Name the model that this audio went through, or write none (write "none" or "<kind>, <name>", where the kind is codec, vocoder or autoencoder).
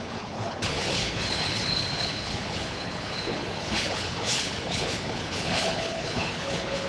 codec, HILCodec